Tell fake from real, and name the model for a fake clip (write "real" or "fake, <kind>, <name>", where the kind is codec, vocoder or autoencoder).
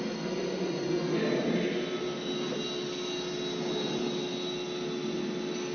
real